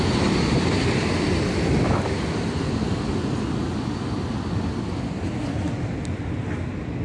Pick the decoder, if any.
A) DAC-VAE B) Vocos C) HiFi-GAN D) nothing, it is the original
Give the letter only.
D